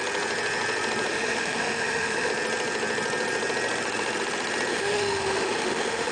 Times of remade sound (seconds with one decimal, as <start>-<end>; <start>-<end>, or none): 1.1-2.3; 4.7-6.1